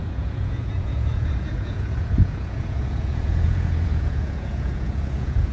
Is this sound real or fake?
fake